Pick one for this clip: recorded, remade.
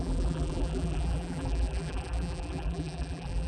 remade